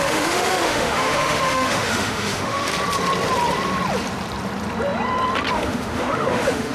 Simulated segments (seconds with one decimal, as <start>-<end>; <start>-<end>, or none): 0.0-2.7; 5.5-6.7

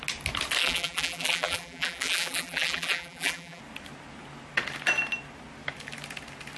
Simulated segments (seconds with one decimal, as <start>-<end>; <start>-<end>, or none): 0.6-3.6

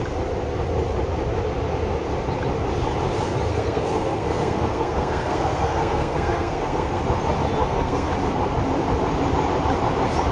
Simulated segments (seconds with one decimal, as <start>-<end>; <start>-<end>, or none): 3.5-7.0; 7.6-8.1

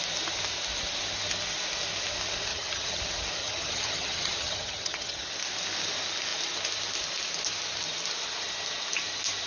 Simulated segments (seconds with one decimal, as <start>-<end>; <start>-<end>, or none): 2.5-3.0; 3.4-5.3

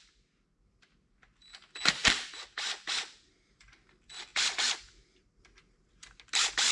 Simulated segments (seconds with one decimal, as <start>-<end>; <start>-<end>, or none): none